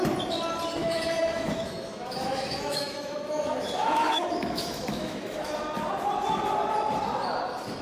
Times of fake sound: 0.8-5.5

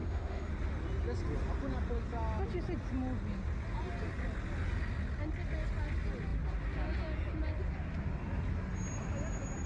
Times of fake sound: 0.0-0.5

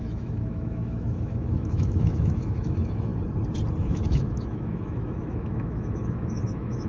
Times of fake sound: 0.0-3.1; 3.8-6.9

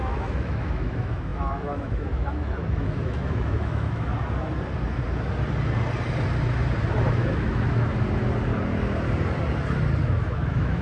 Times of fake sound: 0.0-4.1; 7.1-7.9; 10.0-10.8

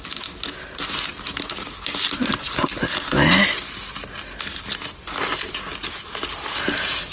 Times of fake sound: none

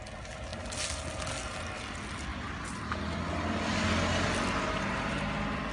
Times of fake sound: none

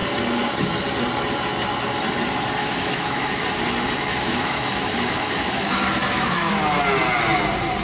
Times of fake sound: 2.6-3.4; 4.1-6.5

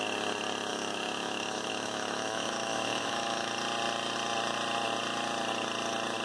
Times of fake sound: 0.7-3.5